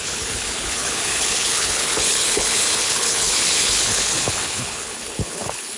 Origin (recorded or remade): remade